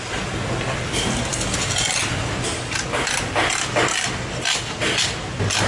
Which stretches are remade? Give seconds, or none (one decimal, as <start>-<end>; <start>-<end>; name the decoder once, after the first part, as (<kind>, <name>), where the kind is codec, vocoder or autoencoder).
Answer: none